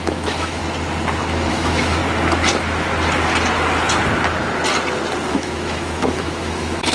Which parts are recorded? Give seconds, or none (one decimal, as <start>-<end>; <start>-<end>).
0.6-1.5; 2.0-5.3